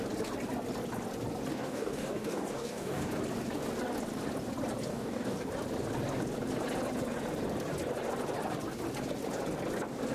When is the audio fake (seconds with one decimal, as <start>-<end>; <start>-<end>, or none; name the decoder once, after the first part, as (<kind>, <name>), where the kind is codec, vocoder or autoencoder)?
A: 1.5-3.1 (codec, DAC); 4.9-5.5